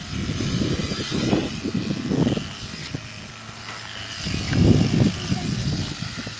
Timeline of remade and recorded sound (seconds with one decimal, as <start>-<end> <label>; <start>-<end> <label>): 0.0-6.4 recorded